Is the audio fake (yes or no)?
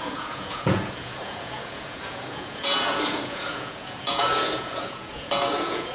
yes